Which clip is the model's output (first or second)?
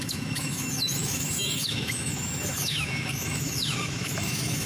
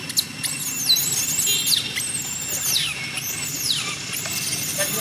first